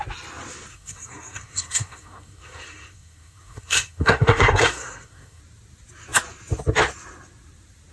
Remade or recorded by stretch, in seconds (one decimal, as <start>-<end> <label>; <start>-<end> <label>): 0.0-0.7 recorded; 0.7-5.4 remade; 5.4-7.9 recorded